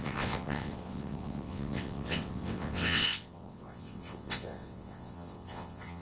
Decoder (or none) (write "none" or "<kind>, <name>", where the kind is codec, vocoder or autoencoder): vocoder, WaveNeXt